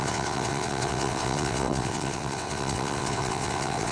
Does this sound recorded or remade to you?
remade